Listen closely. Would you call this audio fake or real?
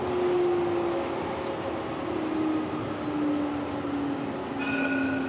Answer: real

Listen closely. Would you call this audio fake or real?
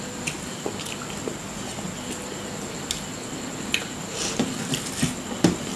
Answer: real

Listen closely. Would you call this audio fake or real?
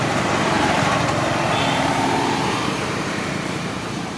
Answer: fake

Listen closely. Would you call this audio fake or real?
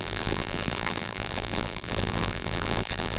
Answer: fake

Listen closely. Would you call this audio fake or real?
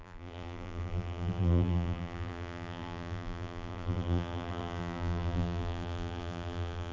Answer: fake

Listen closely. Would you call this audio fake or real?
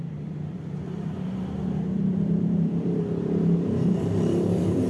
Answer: fake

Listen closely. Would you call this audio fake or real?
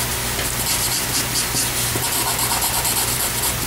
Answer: real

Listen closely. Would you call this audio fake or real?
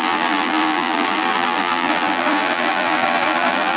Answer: fake